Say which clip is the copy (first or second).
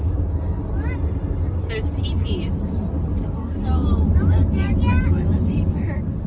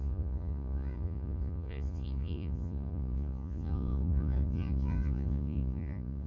second